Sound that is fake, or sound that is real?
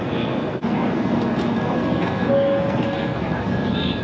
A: fake